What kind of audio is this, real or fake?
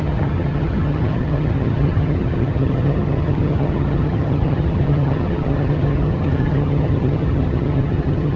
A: fake